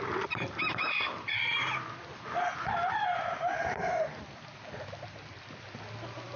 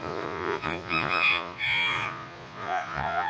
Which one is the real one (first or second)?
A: first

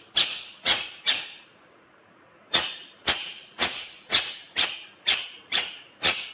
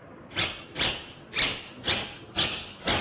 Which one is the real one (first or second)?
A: second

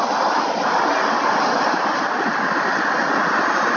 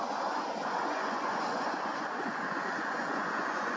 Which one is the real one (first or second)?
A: first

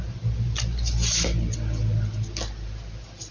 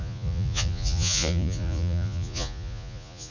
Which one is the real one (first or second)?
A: first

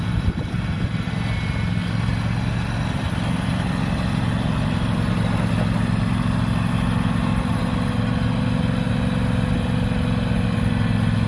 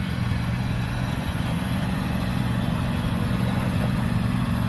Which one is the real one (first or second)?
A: first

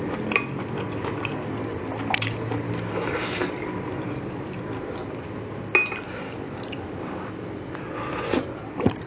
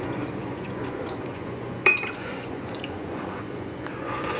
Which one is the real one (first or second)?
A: first